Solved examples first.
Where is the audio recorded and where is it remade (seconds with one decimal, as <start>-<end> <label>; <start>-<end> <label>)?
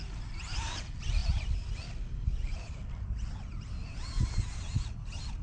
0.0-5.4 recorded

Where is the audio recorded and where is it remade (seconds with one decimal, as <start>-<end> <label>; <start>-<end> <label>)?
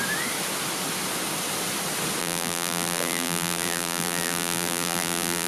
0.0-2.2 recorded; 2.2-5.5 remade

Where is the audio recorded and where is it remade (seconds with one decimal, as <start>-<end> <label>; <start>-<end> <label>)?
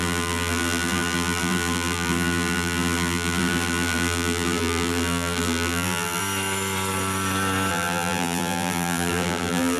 0.0-6.2 remade; 6.2-7.7 recorded; 7.7-9.8 remade